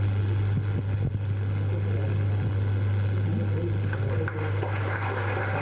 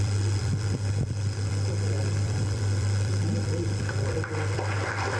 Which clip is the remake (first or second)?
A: second